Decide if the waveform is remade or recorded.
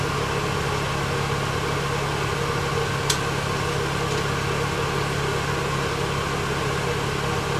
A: recorded